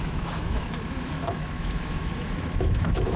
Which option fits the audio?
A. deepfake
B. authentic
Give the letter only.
A